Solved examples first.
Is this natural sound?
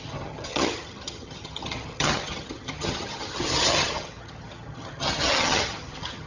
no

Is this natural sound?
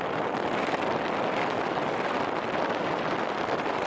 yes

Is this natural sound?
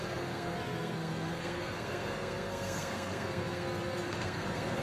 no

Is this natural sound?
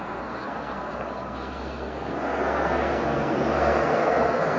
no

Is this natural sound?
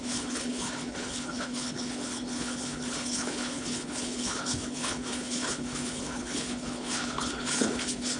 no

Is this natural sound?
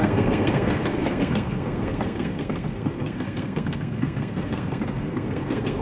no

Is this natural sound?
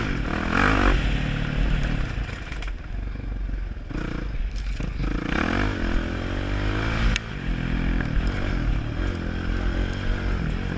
yes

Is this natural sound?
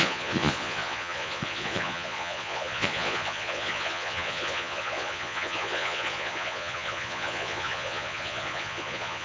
no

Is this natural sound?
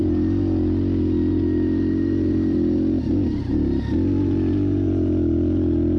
yes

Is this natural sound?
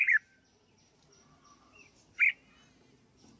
yes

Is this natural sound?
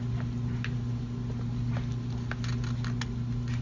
yes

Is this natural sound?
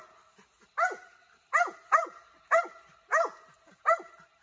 yes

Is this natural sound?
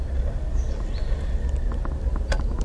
yes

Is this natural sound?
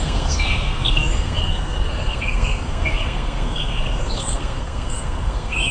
no